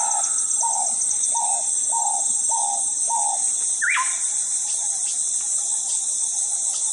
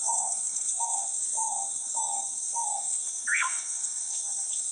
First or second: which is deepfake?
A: second